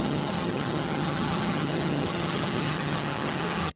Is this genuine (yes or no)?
no